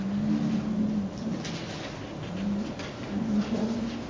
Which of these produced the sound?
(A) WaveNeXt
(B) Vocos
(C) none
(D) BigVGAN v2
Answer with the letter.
C